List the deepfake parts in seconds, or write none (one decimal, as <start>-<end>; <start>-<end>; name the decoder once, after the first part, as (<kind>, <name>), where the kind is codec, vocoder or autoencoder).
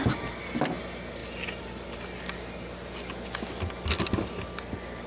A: none